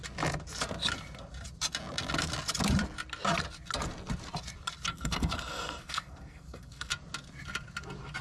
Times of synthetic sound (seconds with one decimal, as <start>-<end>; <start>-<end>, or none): 4.9-6.9